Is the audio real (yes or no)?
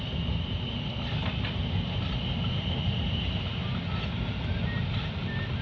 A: yes